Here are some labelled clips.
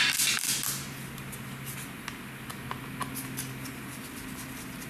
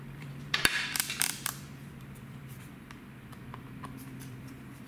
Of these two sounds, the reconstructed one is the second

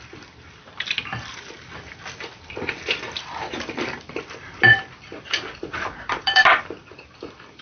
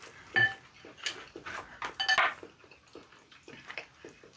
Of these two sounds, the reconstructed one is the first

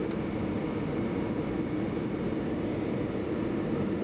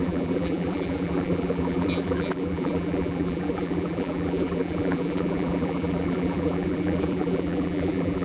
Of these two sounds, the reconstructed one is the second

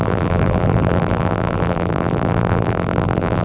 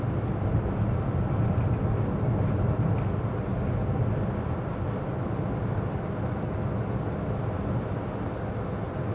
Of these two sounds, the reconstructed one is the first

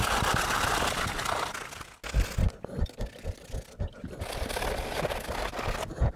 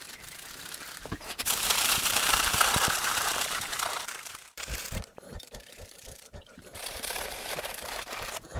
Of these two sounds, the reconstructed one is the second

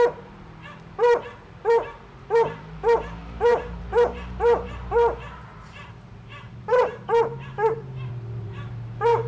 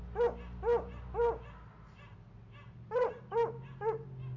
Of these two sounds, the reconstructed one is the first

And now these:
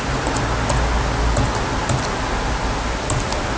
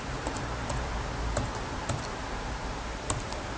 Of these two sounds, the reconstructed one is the second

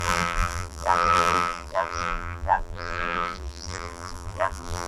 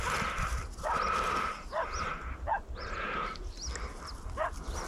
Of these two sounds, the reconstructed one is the first